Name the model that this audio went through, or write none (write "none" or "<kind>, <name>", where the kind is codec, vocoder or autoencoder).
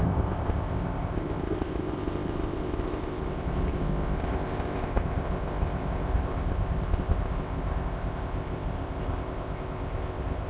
codec, ZipCodec